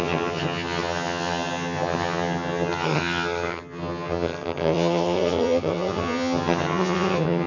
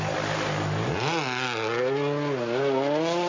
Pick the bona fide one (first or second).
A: second